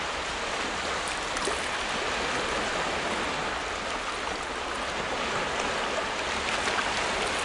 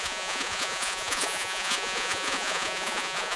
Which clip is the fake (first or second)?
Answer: second